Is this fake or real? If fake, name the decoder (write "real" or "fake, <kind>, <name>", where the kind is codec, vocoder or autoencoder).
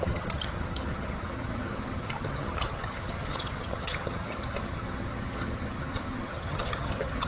fake, vocoder, HiFi-GAN